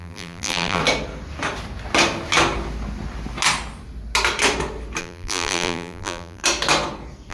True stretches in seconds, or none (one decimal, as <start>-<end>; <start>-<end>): 0.8-5.0; 6.4-7.3